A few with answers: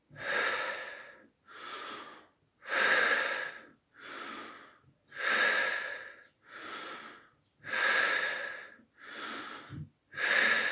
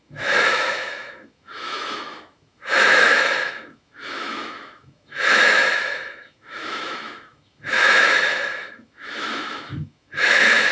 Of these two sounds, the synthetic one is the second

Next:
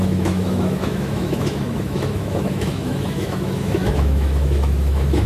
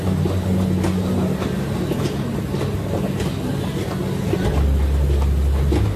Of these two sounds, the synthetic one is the first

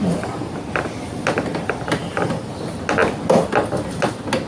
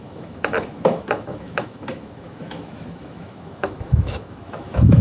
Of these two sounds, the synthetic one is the second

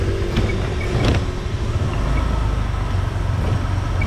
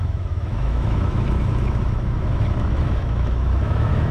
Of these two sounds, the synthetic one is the second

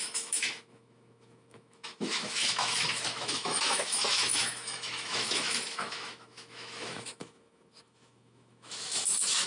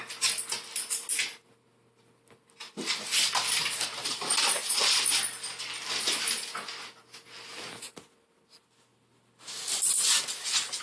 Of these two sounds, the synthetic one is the first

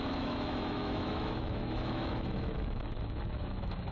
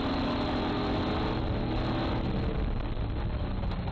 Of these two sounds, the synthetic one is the first